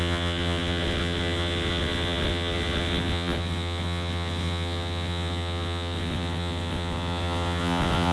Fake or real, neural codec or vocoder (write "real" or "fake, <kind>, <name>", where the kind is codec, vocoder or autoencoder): fake, vocoder, WaveNeXt